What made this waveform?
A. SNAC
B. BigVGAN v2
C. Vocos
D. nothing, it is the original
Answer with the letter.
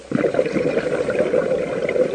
D